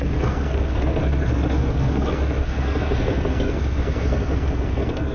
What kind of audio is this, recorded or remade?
remade